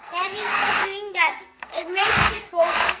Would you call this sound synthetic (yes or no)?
yes